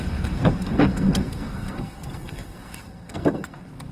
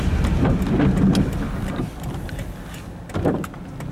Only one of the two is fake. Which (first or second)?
first